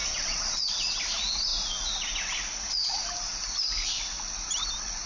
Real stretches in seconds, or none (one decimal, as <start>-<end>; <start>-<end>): 0.6-5.1